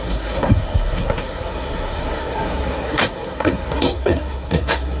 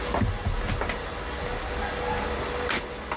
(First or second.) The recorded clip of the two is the second